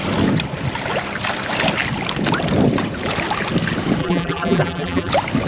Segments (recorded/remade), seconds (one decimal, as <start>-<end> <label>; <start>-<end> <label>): 0.0-4.0 recorded; 4.0-5.1 remade; 5.1-5.5 recorded